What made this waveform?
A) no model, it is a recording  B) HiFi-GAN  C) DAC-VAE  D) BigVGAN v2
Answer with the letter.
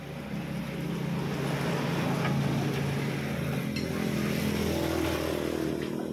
A